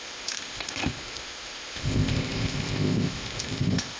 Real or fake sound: fake